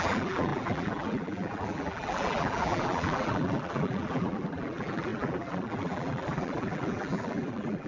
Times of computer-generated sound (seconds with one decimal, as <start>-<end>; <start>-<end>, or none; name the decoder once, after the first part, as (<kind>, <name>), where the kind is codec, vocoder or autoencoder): 0.0-7.9 (vocoder, BigVGAN v2)